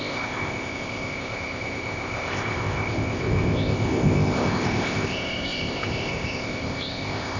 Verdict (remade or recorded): remade